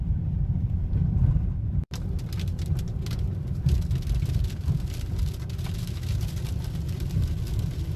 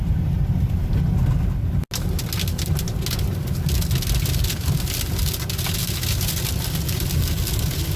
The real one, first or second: second